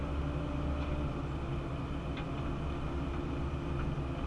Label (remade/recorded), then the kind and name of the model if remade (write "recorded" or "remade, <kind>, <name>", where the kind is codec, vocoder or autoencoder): recorded